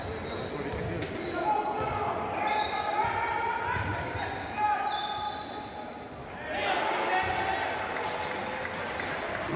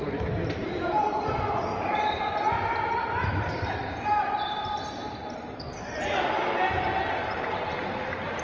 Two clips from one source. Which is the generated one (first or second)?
second